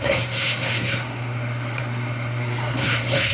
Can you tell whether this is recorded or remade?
remade